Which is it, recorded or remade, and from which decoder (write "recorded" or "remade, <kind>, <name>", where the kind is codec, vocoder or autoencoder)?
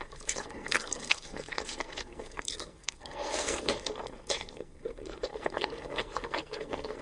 remade, codec, SNAC